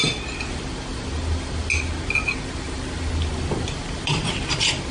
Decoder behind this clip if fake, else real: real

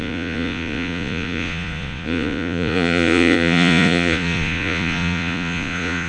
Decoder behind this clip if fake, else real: fake, vocoder, Vocos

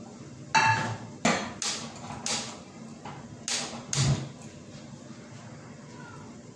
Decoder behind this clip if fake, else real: real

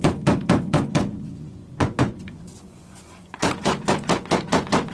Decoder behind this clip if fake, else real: fake, vocoder, Vocos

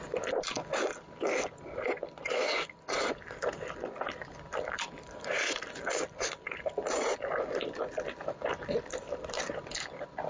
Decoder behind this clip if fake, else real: real